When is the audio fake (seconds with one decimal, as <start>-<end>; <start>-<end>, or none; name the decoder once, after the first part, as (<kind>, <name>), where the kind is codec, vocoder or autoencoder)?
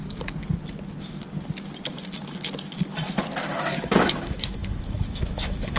3.5-5.8 (autoencoder, DAC-VAE)